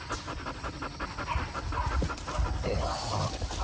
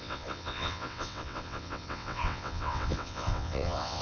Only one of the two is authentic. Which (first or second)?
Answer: first